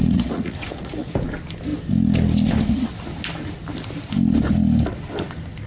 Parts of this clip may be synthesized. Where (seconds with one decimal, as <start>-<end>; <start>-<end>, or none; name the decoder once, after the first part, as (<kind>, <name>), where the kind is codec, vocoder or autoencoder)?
0.0-1.1 (vocoder, Vocos)